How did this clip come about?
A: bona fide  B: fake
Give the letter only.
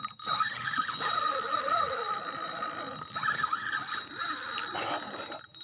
A